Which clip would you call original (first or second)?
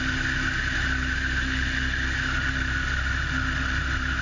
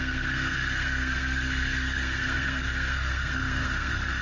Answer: first